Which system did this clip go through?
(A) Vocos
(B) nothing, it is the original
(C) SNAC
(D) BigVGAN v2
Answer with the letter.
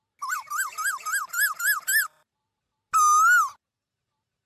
B